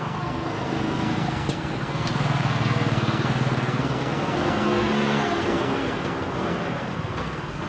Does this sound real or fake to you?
fake